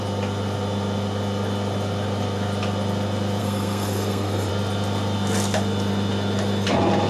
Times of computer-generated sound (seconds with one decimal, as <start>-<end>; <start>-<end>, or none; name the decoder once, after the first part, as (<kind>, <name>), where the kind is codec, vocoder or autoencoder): 3.4-4.5 (codec, SNAC)